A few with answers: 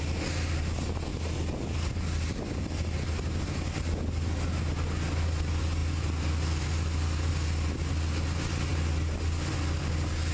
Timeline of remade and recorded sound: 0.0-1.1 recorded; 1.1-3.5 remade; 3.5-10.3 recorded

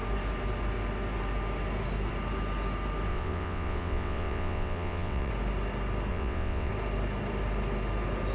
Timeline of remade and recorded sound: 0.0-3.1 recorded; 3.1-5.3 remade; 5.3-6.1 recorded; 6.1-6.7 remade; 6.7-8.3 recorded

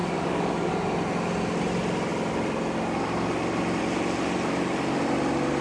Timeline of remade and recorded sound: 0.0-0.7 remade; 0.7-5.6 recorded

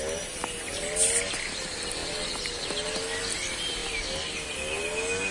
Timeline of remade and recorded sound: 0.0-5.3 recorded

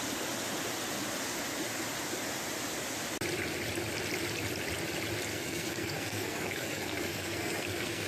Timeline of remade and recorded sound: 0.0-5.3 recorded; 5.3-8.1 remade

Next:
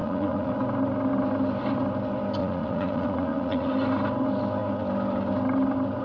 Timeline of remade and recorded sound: 0.0-0.5 remade; 0.5-2.4 recorded; 2.4-3.7 remade; 3.7-6.0 recorded

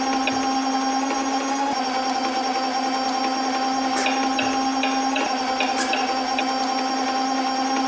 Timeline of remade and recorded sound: 0.0-7.9 recorded